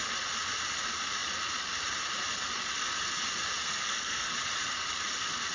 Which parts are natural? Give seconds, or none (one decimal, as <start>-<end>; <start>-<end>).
0.0-3.6; 4.3-5.5